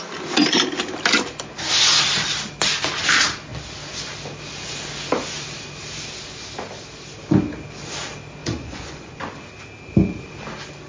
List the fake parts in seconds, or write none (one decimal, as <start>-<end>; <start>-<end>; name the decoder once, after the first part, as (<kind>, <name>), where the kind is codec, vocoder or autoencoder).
8.4-9.2 (vocoder, Vocos)